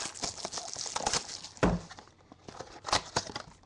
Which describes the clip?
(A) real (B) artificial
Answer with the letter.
A